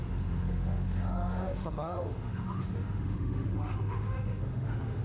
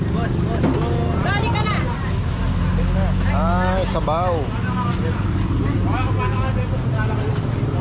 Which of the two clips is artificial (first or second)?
first